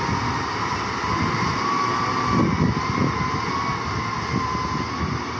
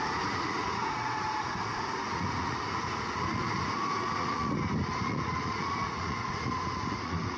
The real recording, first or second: first